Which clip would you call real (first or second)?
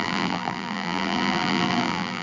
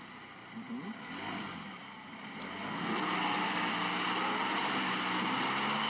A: second